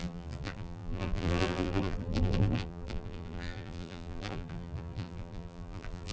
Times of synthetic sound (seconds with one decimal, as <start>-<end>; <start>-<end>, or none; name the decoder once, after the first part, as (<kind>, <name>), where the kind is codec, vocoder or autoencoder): 0.0-6.1 (vocoder, BigVGAN v2)